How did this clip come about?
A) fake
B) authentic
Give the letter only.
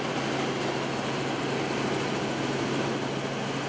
B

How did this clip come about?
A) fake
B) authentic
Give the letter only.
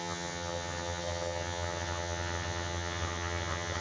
A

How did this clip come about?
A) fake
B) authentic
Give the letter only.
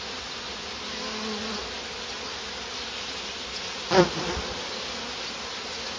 B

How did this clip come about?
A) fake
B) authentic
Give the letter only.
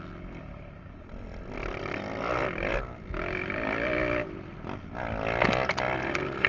B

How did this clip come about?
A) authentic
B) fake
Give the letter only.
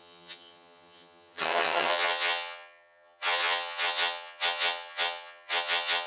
B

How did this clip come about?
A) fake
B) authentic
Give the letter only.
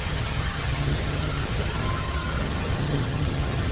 A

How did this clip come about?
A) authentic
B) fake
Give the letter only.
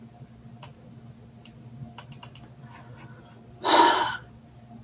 A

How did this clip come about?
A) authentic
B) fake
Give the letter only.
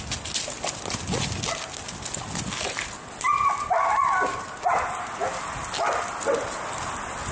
A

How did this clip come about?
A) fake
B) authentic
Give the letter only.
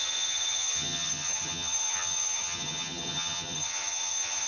A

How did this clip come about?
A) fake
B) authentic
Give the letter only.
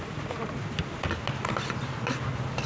B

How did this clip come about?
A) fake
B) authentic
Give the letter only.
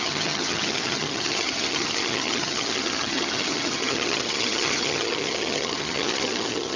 A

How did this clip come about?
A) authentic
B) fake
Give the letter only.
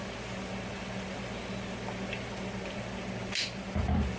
A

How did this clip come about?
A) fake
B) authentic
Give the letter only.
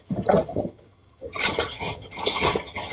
A